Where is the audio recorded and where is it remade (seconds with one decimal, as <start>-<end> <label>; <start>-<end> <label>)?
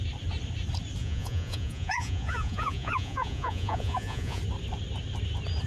0.0-1.0 recorded; 1.0-4.4 remade; 4.4-5.7 recorded